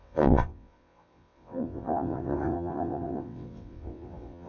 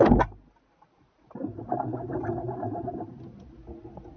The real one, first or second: second